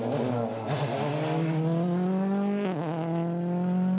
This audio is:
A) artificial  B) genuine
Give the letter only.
B